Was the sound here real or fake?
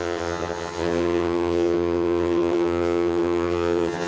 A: fake